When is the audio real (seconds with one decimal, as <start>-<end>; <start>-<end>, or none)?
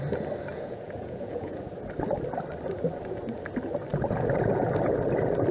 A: 0.0-0.5; 1.7-5.5